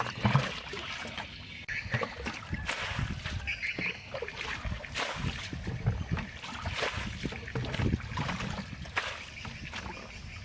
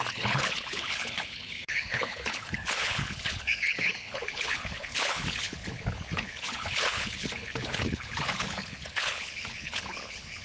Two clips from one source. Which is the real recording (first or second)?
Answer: first